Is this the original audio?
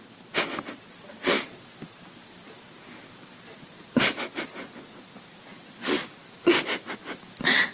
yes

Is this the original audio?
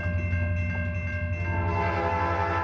yes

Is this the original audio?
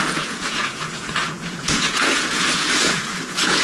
no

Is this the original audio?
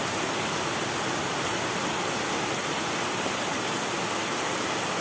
yes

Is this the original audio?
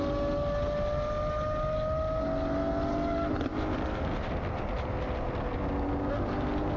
yes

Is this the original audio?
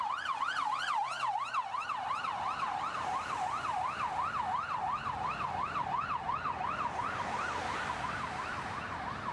yes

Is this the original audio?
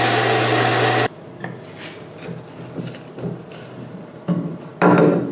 yes